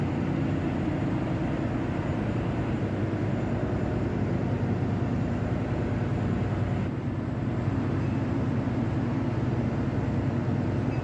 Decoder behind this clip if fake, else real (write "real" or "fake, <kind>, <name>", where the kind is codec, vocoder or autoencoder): real